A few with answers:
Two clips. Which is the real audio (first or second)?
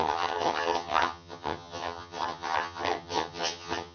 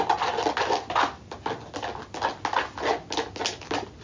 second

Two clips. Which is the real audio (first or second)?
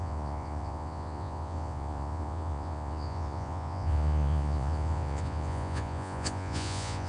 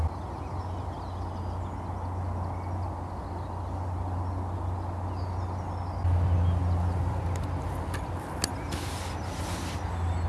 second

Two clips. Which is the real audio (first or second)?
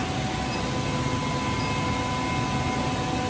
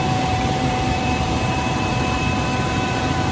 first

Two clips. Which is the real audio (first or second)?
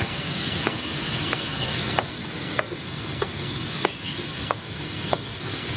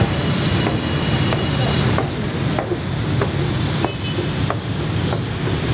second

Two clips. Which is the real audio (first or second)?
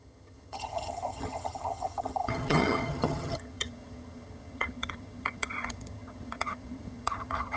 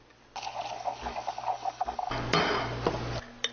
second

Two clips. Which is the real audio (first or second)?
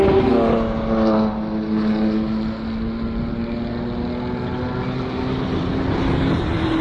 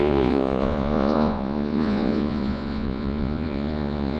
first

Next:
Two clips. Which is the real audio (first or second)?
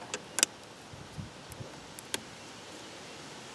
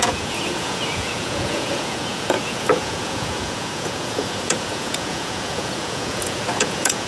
first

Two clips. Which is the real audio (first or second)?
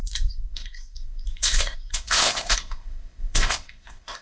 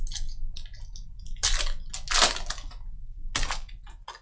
second